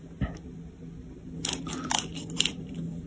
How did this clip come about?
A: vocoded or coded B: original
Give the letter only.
B